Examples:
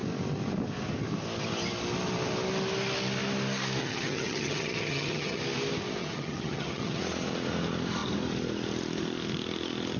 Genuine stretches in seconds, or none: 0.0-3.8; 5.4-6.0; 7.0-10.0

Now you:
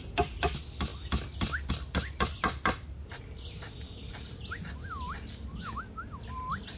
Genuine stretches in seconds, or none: 0.0-6.8

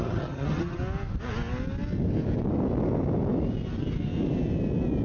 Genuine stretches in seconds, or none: 0.8-5.0

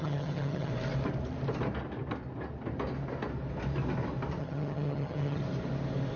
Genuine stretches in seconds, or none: 0.7-4.4; 5.4-6.2

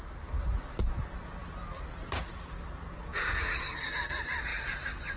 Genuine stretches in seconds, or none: 0.0-5.2

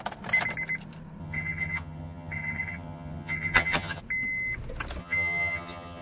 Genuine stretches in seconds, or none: 0.0-1.2; 4.0-5.0

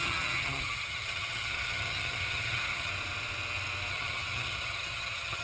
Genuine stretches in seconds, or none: 2.9-3.9